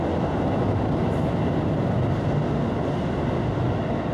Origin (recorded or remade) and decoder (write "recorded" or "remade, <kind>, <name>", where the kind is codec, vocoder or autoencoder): recorded